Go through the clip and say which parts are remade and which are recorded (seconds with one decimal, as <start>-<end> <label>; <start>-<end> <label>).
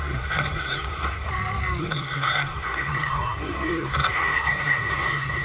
0.0-1.3 remade; 1.3-1.8 recorded; 1.8-5.4 remade